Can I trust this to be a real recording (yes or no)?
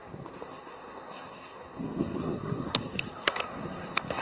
no